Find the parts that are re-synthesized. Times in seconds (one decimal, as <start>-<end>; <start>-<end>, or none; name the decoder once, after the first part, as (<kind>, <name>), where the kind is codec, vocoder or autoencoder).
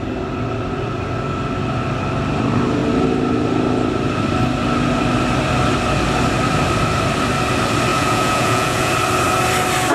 7.9-8.9 (vocoder, Vocos)